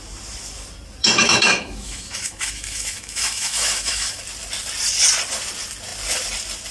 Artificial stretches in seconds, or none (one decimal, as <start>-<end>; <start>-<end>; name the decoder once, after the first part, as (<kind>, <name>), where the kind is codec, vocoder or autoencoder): 1.0-4.2 (autoencoder, DAC-VAE)